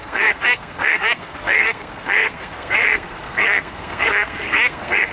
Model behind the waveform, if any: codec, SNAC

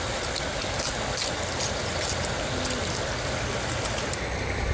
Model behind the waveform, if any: none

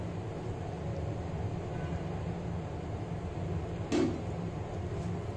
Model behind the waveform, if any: none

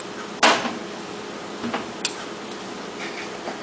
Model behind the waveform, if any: none